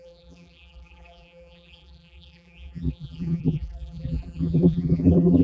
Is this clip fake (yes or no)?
yes